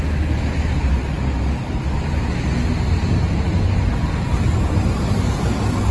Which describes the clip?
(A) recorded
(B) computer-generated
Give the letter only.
A